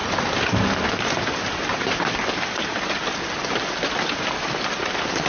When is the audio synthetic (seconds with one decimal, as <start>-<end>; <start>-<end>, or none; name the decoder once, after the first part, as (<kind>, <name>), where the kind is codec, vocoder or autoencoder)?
none